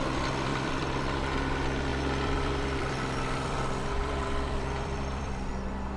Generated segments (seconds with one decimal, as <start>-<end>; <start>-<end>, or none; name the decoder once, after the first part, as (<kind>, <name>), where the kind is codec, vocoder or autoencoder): 0.5-1.3 (vocoder, BigVGAN v2); 1.9-5.5